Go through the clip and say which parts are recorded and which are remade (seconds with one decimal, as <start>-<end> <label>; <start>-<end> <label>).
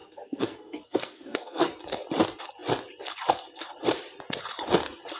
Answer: 0.0-1.8 remade; 1.8-5.2 recorded